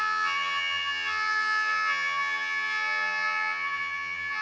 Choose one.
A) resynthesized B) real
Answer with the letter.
A